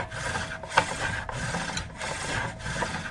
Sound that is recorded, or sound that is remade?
recorded